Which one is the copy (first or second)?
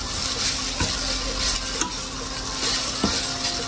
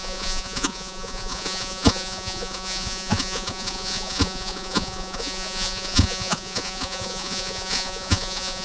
second